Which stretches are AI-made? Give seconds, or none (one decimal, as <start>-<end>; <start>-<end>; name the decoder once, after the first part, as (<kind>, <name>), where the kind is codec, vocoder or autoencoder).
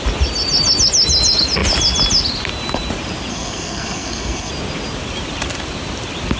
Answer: 3.3-4.5 (codec, SNAC)